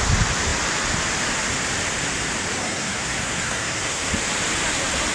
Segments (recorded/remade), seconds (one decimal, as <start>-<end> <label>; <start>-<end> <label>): 0.0-2.6 recorded; 2.6-4.1 remade; 4.1-5.1 recorded

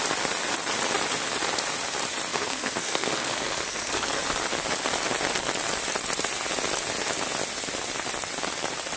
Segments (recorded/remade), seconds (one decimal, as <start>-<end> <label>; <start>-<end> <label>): 0.0-2.3 recorded; 2.3-4.2 remade; 4.2-9.0 recorded